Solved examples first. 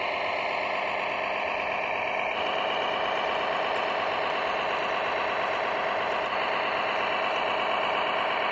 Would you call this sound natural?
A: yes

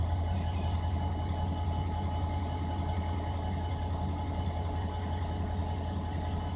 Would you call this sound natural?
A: yes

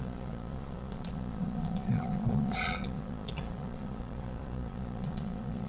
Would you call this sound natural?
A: no